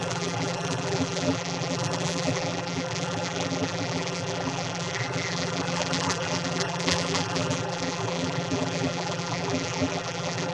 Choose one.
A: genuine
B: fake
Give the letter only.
B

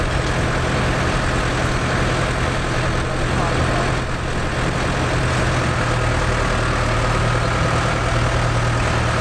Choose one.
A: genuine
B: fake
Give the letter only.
A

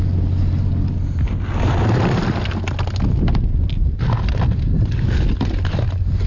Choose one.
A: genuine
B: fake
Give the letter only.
A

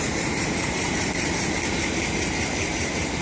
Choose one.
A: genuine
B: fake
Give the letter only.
B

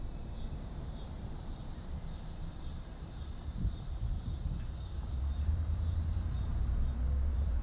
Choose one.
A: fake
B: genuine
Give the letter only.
A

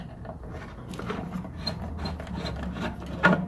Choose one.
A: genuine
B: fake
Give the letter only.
A